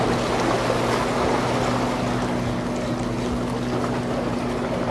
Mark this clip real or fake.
real